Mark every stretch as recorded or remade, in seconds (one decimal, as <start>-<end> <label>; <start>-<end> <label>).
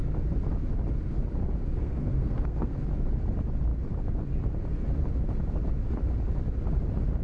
0.0-1.8 recorded; 1.8-2.7 remade; 2.7-7.2 recorded